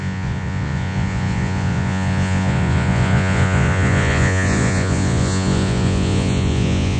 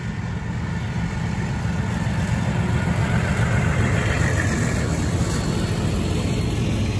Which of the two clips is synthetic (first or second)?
first